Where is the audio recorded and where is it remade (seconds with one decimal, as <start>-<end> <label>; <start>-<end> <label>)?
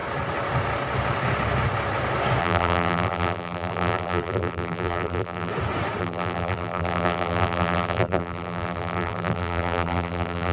0.0-2.4 recorded; 2.4-5.5 remade; 5.5-6.0 recorded; 6.0-10.5 remade